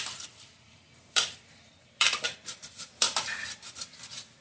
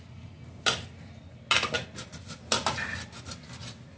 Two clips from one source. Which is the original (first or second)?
second